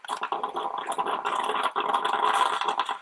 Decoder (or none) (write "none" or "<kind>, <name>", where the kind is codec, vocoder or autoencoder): none